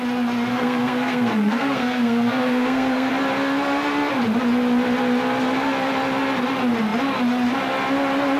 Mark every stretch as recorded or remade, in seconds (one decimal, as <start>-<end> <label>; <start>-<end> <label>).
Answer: 0.0-0.5 recorded; 0.5-3.1 remade; 3.1-8.4 recorded